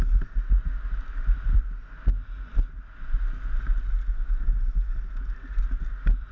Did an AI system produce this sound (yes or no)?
no